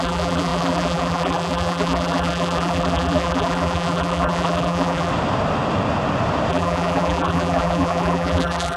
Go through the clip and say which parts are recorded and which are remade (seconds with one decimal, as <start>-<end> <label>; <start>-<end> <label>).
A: 0.0-5.1 remade; 5.1-6.5 recorded; 6.5-8.8 remade